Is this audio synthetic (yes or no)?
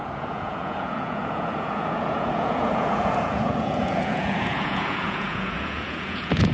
yes